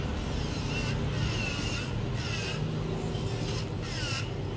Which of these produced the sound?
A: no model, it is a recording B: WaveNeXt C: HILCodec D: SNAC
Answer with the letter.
A